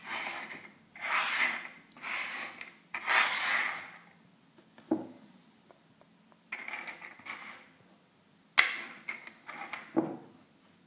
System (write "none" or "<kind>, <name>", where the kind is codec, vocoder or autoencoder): none